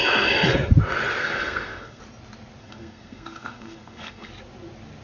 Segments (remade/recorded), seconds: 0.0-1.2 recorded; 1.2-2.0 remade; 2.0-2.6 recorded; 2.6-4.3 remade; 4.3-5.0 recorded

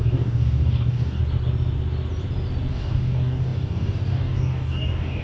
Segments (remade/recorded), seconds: 0.0-1.2 remade; 1.2-2.7 recorded; 2.7-5.2 remade

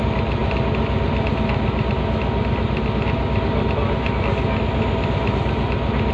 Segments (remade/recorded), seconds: 0.0-6.1 recorded

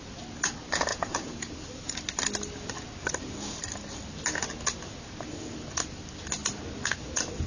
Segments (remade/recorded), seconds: 0.0-0.9 recorded; 0.9-1.5 remade; 1.5-7.5 recorded

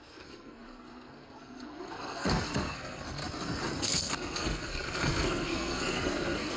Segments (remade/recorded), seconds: 0.0-3.2 remade; 3.2-3.8 recorded; 3.8-6.6 remade

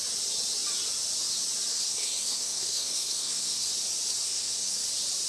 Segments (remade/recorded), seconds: 0.0-1.7 recorded; 1.7-3.7 remade; 3.7-4.2 recorded; 4.2-4.8 remade; 4.8-5.3 recorded

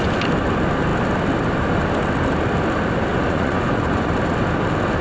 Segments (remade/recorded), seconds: 0.0-3.1 recorded; 3.1-4.1 remade; 4.1-5.0 recorded

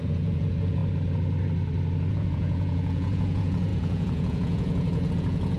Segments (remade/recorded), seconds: 0.0-0.8 remade; 0.8-2.1 recorded; 2.1-5.6 remade